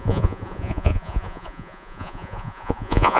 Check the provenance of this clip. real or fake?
fake